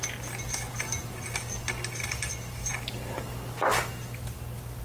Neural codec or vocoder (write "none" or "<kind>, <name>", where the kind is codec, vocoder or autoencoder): none